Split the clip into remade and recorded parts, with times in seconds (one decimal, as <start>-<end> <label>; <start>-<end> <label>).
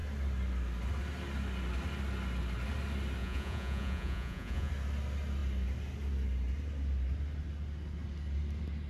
0.0-3.2 recorded; 3.2-4.7 remade; 4.7-8.9 recorded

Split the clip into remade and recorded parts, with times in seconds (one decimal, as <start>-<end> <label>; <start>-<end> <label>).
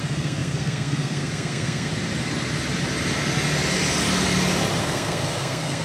0.0-1.9 remade; 1.9-4.8 recorded; 4.8-5.8 remade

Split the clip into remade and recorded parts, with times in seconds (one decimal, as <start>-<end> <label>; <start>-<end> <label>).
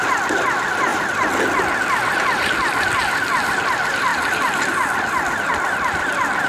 0.0-6.5 recorded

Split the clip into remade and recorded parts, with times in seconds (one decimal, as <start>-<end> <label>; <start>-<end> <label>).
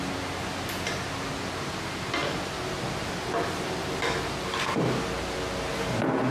0.0-6.3 recorded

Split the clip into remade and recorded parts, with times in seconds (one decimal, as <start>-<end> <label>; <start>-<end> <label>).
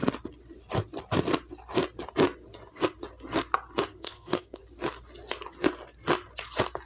0.0-3.9 recorded; 3.9-4.6 remade; 4.6-6.9 recorded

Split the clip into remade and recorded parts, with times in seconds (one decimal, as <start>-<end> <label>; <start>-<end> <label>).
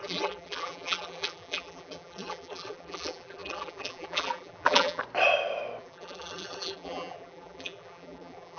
0.0-5.0 remade; 5.0-5.8 recorded; 5.8-8.6 remade